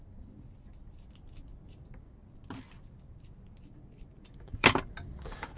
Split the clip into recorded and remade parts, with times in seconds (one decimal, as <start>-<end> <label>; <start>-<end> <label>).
0.0-4.1 recorded; 4.1-4.8 remade; 4.8-5.6 recorded

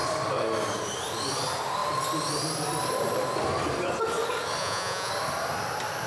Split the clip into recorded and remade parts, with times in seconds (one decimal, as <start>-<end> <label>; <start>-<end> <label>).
0.0-4.6 recorded; 4.6-5.1 remade; 5.1-6.1 recorded

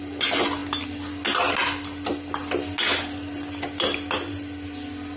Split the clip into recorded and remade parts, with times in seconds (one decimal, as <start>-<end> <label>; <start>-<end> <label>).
0.0-5.2 recorded

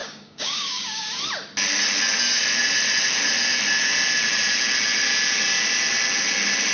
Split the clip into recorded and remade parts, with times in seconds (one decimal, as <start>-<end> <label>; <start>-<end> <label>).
0.0-1.0 remade; 1.0-6.7 recorded